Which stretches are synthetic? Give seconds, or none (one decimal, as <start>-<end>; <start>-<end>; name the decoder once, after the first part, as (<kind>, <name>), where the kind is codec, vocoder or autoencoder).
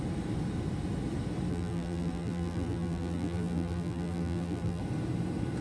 1.5-4.8 (vocoder, BigVGAN v2)